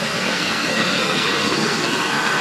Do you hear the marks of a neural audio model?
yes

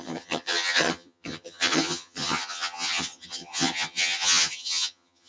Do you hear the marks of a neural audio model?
yes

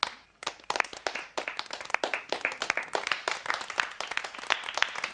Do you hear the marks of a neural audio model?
no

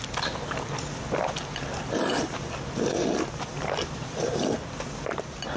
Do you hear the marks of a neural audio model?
no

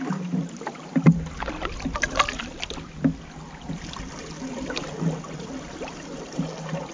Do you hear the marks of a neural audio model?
no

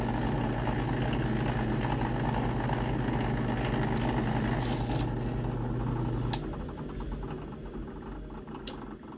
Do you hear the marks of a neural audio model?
no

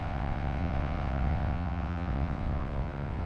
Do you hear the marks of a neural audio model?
yes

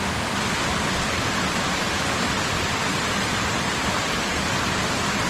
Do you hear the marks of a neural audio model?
no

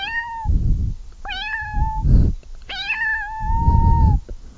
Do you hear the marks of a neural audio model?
no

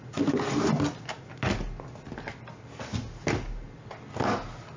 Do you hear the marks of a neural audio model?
no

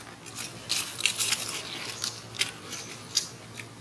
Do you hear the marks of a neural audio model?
no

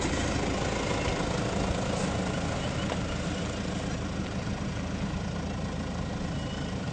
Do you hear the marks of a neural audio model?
no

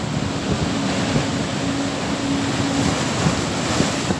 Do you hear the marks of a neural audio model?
no